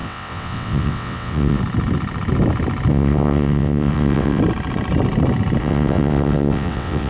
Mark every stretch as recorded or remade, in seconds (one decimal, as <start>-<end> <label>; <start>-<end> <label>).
0.0-1.6 remade; 1.6-2.9 recorded; 2.9-4.4 remade; 4.4-5.6 recorded; 5.6-7.1 remade